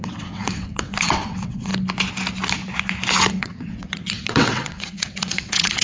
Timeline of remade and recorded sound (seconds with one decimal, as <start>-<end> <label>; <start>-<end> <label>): 0.0-1.7 remade; 1.7-3.3 recorded; 3.3-5.8 remade